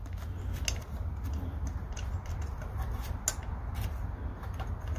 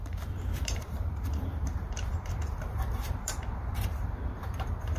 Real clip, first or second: first